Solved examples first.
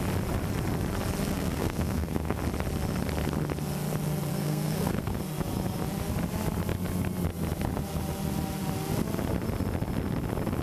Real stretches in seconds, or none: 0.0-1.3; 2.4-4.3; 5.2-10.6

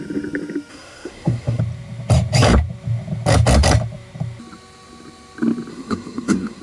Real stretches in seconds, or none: 0.0-0.7; 1.6-5.7

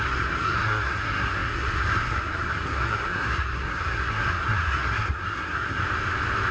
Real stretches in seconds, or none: 5.8-6.5

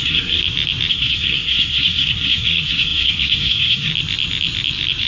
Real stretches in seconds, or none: 0.4-0.9; 3.9-5.1